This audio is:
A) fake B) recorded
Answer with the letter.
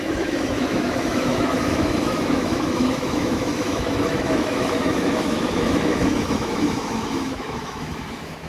A